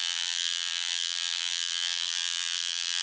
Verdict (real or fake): fake